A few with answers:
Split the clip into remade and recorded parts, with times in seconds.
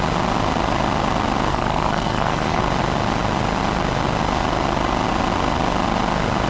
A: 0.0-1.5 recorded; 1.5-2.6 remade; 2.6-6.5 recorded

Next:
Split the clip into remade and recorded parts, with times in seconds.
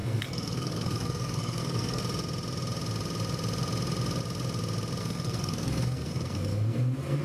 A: 0.0-2.0 remade; 2.0-5.0 recorded; 5.0-7.2 remade